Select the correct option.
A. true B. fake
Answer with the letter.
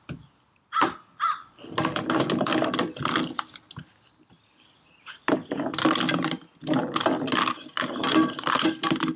A